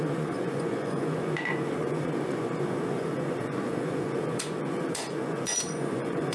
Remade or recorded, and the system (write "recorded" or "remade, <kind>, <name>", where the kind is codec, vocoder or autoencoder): remade, vocoder, Vocos